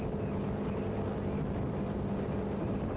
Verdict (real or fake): real